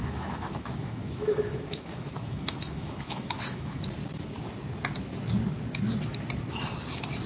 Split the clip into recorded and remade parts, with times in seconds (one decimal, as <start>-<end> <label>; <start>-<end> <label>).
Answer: 0.0-3.8 remade; 3.8-7.3 recorded